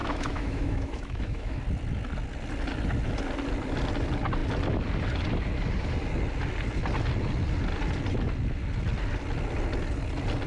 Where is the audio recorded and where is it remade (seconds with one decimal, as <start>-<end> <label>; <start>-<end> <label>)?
0.0-1.6 remade; 1.6-10.5 recorded